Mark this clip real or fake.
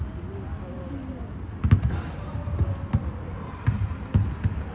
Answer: real